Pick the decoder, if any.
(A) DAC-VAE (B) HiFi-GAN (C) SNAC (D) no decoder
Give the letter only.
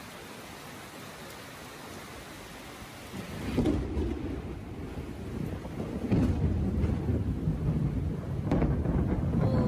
D